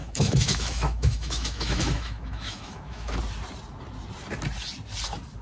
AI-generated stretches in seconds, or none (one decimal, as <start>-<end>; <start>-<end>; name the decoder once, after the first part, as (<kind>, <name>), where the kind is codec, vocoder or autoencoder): 0.0-3.2 (autoencoder, DAC-VAE)